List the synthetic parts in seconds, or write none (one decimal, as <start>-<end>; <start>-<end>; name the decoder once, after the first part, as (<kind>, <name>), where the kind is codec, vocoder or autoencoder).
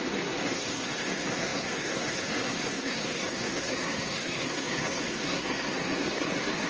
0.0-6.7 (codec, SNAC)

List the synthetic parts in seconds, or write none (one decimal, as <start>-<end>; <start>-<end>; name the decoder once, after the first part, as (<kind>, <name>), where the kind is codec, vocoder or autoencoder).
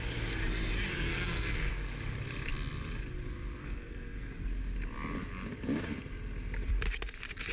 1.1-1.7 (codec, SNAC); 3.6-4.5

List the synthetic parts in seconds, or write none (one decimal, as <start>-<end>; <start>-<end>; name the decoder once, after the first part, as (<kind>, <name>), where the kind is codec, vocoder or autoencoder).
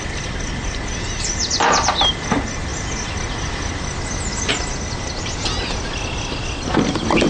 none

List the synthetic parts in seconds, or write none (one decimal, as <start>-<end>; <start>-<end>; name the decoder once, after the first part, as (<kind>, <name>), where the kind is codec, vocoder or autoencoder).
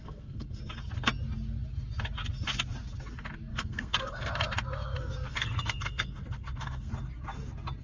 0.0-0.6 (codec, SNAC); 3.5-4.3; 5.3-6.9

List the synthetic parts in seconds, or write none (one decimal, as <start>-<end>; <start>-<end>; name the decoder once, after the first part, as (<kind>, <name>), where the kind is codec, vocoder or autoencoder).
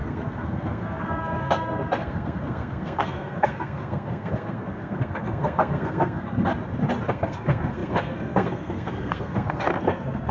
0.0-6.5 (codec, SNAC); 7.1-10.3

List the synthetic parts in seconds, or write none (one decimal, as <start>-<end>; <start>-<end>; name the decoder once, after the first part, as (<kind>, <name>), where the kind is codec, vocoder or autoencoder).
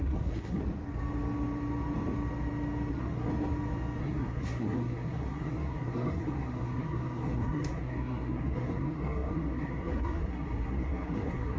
0.0-0.6 (codec, SNAC); 2.9-3.3; 4.0-11.6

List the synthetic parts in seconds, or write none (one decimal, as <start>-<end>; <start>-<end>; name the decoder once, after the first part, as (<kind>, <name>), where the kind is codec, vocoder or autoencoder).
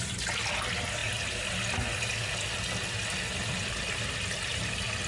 none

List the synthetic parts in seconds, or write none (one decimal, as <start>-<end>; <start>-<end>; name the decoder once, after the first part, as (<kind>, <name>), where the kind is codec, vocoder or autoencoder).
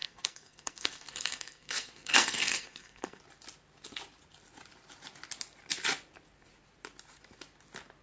0.0-3.2 (codec, SNAC)